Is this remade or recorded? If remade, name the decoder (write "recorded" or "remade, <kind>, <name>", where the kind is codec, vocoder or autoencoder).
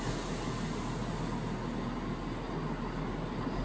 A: recorded